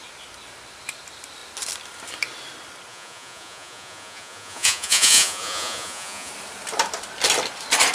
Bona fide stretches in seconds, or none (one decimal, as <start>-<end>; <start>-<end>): 0.0-2.9; 6.3-7.9